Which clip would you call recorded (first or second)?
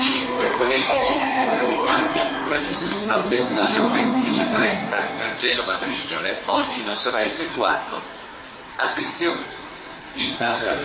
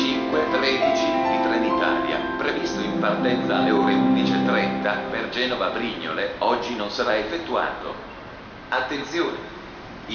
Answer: second